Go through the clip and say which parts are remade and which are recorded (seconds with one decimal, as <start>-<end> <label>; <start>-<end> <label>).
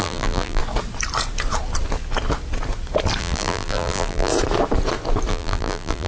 0.0-0.6 remade; 0.6-3.2 recorded; 3.2-4.3 remade; 4.3-5.3 recorded; 5.3-6.1 remade